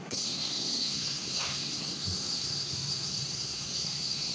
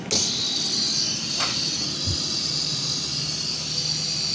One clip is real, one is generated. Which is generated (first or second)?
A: first